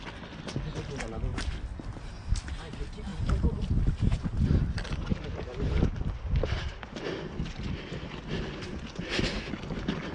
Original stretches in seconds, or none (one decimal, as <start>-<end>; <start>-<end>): 0.0-10.1